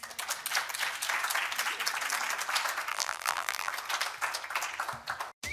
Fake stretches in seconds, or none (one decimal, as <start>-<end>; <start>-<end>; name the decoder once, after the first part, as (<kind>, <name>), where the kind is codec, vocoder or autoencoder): 2.9-3.7 (vocoder, BigVGAN v2)